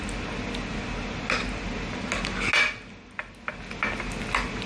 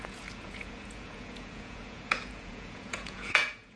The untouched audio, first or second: first